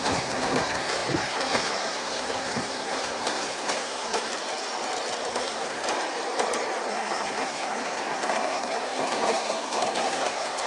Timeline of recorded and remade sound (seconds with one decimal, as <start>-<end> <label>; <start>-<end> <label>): 0.0-4.3 remade; 4.3-5.3 recorded; 5.3-5.8 remade; 5.8-6.9 recorded; 6.9-10.7 remade